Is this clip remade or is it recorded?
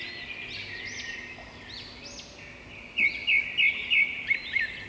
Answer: recorded